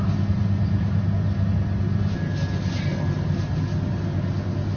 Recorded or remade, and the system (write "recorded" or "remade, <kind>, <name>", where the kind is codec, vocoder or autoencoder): recorded